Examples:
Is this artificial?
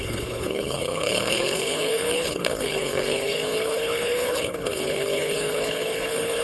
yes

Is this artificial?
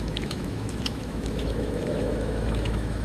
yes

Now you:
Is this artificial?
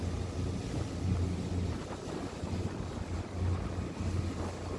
no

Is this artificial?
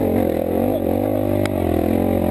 yes